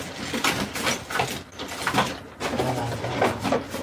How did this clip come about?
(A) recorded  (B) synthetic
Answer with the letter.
A